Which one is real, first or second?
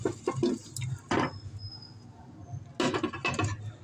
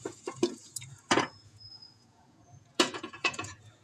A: first